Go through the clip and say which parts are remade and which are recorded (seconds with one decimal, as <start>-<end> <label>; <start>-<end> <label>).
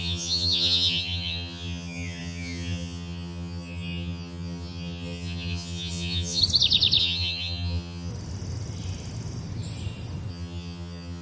0.0-6.4 remade; 6.4-7.0 recorded; 7.0-8.1 remade; 8.1-10.3 recorded; 10.3-11.2 remade